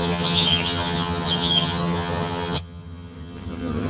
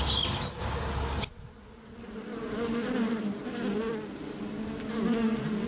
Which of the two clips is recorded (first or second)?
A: second